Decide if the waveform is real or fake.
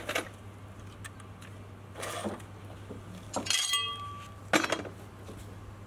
real